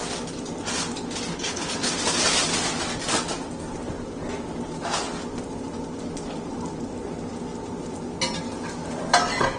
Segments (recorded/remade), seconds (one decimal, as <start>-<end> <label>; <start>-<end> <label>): 0.0-1.3 recorded; 1.3-1.9 remade; 1.9-9.6 recorded